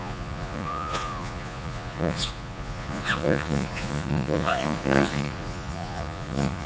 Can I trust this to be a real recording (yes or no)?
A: no